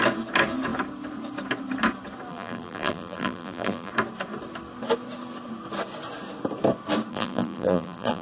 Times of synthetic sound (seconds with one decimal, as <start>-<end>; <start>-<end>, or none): 2.3-3.9; 7.1-8.2